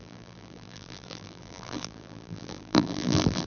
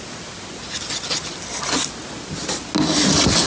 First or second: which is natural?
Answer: second